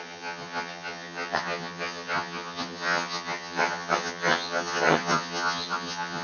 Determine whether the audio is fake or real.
fake